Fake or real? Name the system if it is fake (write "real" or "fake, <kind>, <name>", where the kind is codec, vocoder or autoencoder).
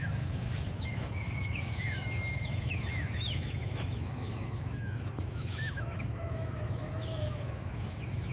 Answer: fake, autoencoder, DAC-VAE